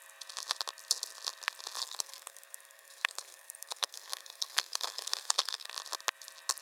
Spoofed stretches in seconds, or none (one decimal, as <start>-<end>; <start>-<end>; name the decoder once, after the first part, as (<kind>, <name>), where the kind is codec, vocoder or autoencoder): 1.8-5.7 (codec, SNAC)